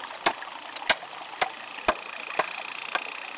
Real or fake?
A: real